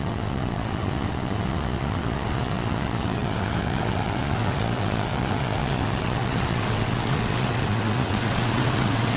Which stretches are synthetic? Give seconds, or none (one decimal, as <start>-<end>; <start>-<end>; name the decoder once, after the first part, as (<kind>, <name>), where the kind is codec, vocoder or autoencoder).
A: 0.0-9.2 (vocoder, WaveNeXt)